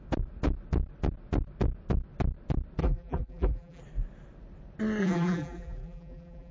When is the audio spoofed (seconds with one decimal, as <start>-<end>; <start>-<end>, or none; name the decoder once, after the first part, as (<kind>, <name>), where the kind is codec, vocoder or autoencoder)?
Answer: 2.8-3.8 (vocoder, BigVGAN v2); 5.0-6.5